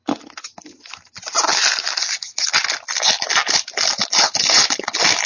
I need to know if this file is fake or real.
real